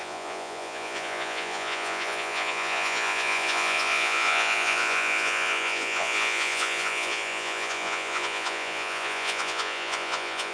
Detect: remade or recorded remade